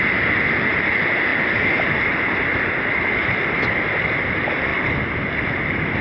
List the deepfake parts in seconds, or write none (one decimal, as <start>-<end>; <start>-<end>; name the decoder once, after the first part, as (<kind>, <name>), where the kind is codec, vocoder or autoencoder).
none